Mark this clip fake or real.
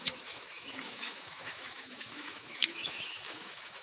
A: fake